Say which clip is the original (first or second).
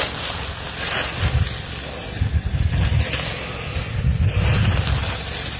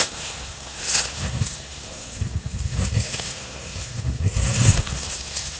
first